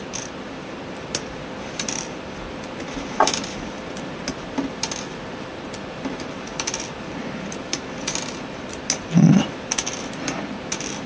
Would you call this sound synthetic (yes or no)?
no